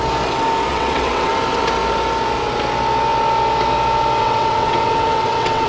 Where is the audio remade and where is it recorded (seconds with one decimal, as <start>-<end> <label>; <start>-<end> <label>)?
0.0-0.7 recorded; 0.7-1.3 remade; 1.3-4.2 recorded; 4.2-5.7 remade